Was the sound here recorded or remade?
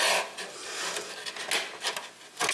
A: recorded